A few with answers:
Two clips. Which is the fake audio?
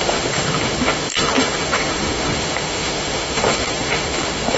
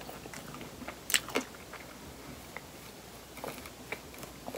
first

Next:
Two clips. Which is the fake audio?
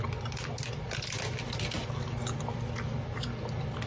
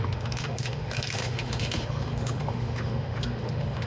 second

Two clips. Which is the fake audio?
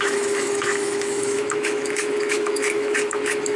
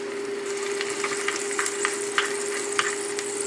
first